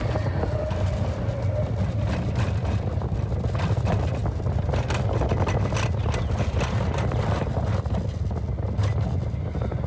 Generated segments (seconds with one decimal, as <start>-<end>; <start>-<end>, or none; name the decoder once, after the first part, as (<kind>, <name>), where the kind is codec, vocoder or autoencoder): none

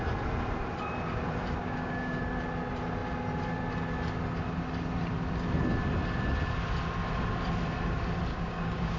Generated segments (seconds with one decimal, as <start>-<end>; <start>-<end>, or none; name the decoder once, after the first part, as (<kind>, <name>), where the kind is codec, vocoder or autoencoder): 1.6-2.2 (codec, DAC); 8.3-9.0

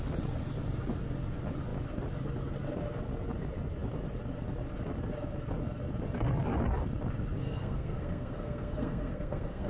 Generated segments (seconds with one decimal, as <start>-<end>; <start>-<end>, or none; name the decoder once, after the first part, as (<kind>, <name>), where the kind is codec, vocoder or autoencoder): 7.4-9.7 (codec, SNAC)